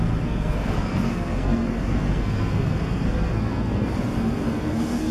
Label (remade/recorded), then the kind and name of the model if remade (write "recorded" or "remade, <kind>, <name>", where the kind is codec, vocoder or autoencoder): remade, codec, SNAC